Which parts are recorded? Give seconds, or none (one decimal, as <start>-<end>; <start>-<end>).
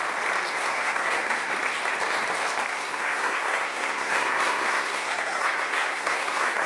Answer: 0.0-0.5; 1.5-2.7